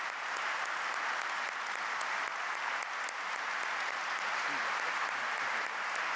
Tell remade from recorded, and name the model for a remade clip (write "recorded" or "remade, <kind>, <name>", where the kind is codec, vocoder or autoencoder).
recorded